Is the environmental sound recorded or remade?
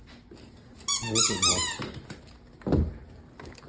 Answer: recorded